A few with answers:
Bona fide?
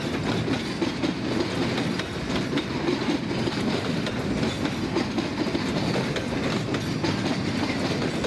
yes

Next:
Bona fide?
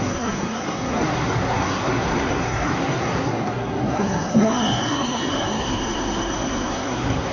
no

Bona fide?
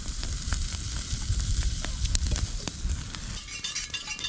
yes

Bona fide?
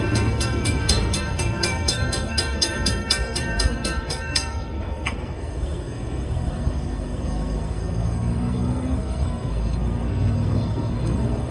no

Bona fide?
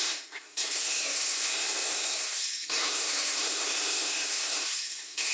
no